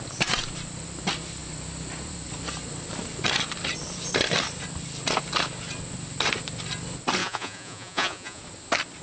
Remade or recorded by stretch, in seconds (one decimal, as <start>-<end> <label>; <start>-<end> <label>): 0.0-7.2 recorded; 7.2-8.4 remade; 8.4-9.0 recorded